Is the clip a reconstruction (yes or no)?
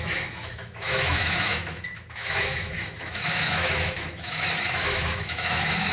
yes